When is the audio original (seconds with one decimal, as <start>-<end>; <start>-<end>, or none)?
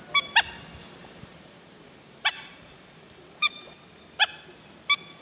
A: 0.0-1.0; 3.8-5.2